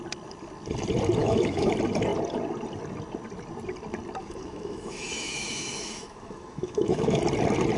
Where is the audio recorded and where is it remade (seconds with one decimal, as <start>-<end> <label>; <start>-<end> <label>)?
0.0-1.2 recorded; 1.2-1.7 remade; 1.7-4.2 recorded; 4.2-7.2 remade; 7.2-7.8 recorded